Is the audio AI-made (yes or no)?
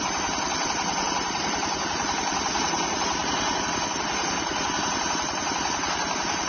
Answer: no